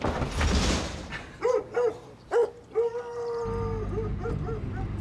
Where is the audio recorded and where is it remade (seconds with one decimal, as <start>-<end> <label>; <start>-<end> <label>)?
0.0-5.0 recorded